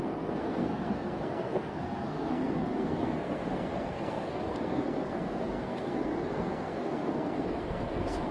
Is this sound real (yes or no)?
no